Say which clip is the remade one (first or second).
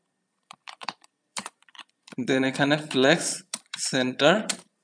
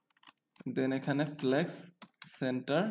first